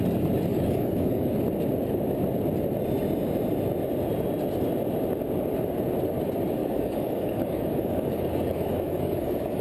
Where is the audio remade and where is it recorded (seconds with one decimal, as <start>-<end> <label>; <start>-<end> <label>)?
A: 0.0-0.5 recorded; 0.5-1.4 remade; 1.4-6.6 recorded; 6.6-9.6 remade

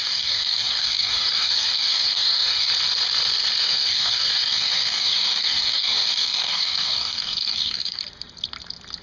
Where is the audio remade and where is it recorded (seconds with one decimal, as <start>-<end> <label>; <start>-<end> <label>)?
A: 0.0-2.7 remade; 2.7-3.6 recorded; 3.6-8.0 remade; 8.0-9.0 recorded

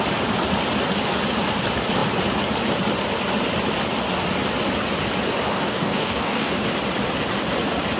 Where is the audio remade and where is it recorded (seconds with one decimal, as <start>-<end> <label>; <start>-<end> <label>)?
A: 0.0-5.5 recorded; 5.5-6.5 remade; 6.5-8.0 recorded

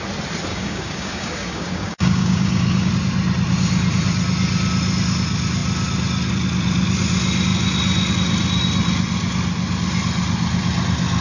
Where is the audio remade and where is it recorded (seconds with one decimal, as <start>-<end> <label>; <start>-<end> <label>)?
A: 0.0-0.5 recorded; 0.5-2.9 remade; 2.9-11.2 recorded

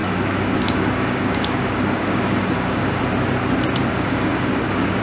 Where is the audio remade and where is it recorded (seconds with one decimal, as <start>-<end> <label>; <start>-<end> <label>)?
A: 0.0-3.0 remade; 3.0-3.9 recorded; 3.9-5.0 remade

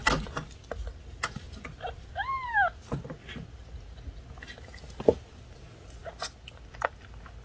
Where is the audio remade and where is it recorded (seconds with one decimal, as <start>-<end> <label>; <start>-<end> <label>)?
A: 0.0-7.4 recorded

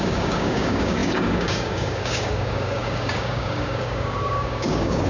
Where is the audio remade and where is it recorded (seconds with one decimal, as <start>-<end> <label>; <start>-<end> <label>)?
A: 0.0-5.1 remade

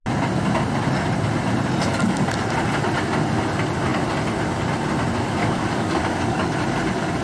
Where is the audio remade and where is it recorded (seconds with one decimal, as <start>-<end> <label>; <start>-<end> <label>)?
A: 0.0-5.4 recorded; 5.4-6.5 remade; 6.5-7.2 recorded